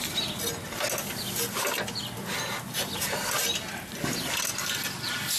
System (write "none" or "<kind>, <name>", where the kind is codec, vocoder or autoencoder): none